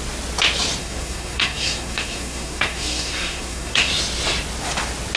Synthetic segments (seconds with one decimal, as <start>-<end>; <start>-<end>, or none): 0.8-3.9